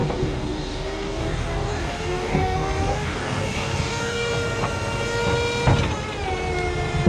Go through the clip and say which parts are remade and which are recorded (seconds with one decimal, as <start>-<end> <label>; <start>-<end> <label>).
0.0-4.3 remade; 4.3-7.1 recorded